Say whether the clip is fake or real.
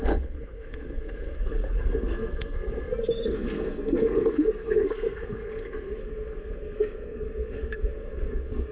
fake